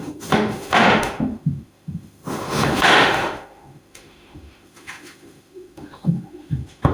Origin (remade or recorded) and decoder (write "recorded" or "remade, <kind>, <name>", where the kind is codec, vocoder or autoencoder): remade, autoencoder, DAC-VAE